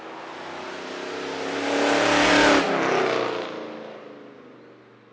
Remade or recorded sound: recorded